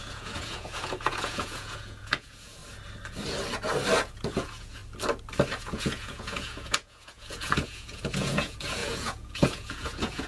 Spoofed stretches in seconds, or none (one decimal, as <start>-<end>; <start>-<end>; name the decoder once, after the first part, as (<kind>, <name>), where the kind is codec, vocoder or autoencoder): 0.0-2.6 (vocoder, Vocos); 4.0-4.8; 5.6-10.3

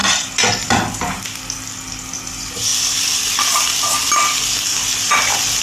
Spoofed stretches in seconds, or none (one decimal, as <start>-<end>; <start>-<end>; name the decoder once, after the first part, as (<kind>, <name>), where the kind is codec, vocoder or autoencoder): none

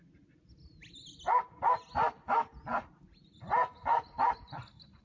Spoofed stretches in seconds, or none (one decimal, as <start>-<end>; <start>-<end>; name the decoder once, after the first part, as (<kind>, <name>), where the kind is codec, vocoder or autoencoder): none

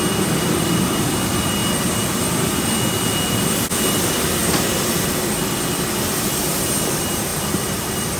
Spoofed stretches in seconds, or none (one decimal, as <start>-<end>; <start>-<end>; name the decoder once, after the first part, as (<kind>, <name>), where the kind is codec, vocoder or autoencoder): 1.6-3.1 (vocoder, BigVGAN v2); 4.4-5.1; 7.3-8.2

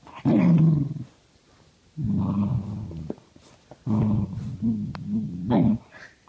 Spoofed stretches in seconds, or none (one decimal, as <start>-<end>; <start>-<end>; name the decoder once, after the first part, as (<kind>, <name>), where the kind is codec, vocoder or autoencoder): none

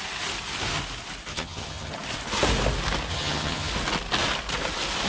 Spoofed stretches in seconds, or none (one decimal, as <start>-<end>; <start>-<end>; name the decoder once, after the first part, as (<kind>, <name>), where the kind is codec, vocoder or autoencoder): 1.3-1.9 (vocoder, HiFi-GAN); 3.1-3.7